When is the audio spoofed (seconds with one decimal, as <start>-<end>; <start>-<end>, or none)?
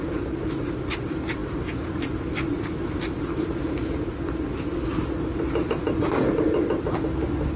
none